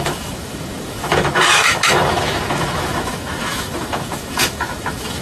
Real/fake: fake